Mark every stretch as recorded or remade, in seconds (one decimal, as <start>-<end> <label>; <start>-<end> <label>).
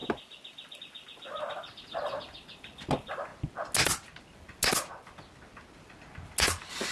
0.0-6.9 recorded